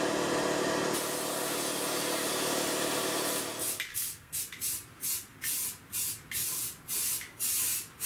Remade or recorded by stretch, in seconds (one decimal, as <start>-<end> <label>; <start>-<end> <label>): 0.0-3.9 recorded; 3.9-4.4 remade; 4.4-8.1 recorded